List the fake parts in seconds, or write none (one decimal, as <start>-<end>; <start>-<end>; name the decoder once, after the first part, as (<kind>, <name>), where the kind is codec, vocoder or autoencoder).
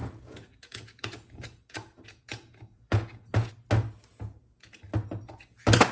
0.0-3.5 (vocoder, Vocos); 4.1-4.8